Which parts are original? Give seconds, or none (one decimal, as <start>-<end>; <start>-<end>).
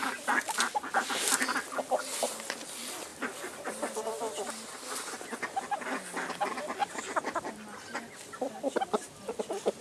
0.0-9.8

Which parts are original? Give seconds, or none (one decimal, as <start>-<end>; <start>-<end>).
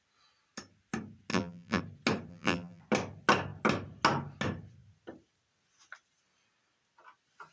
0.0-1.3; 1.8-2.3; 2.8-7.5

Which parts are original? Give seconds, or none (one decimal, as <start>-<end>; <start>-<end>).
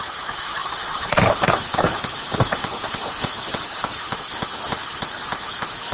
0.0-0.6; 4.1-5.9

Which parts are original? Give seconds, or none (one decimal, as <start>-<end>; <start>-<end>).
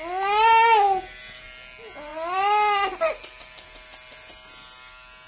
0.0-5.3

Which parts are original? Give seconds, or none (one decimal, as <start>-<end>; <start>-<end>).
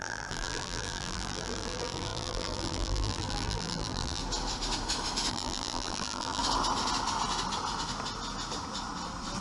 4.2-5.3; 6.4-9.4